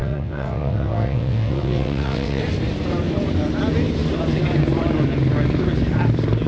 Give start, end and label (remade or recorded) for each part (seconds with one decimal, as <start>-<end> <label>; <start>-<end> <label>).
0.0-2.4 remade; 2.4-6.5 recorded

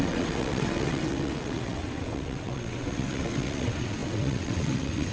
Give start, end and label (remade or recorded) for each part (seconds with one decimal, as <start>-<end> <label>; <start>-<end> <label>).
0.0-5.1 remade

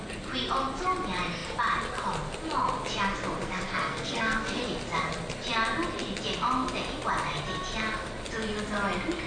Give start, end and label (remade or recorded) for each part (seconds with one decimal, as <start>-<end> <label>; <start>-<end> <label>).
0.0-3.4 recorded; 3.4-4.6 remade; 4.6-9.3 recorded

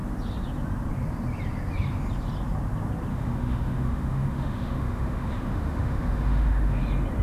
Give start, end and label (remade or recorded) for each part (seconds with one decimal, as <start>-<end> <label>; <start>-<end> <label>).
0.0-3.1 recorded; 3.1-6.8 remade; 6.8-7.2 recorded

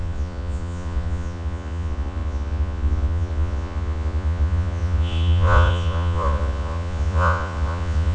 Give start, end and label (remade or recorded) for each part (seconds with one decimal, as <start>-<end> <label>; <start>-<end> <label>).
0.0-8.1 remade

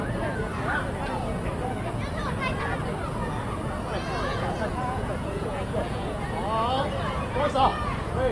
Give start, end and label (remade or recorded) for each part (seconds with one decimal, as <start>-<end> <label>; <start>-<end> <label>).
0.0-0.5 remade; 0.5-4.2 recorded; 4.2-6.4 remade; 6.4-7.0 recorded; 7.0-8.3 remade